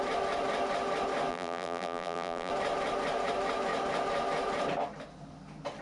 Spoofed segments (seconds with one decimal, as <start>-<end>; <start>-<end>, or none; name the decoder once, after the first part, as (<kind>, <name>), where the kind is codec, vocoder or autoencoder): 1.3-2.5 (vocoder, BigVGAN v2)

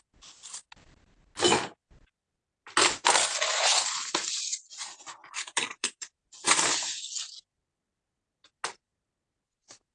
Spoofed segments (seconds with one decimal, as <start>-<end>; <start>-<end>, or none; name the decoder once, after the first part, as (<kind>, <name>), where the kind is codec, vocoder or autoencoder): 5.2-6.3 (vocoder, BigVGAN v2)

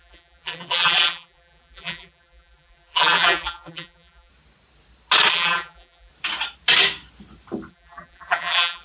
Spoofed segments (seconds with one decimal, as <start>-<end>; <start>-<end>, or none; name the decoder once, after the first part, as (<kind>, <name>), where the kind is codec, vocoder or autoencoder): 0.0-4.3 (vocoder, BigVGAN v2); 5.3-6.1; 7.7-8.8

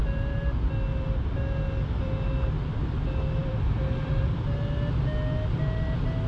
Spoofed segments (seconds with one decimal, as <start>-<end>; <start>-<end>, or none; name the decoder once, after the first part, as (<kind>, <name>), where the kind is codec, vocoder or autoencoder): 3.4-4.5 (vocoder, BigVGAN v2)

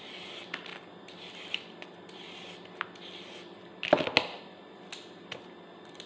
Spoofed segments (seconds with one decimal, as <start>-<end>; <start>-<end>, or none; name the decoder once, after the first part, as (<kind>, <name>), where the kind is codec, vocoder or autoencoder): none